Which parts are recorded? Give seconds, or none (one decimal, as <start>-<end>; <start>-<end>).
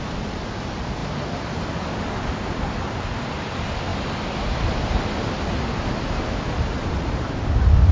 0.0-7.9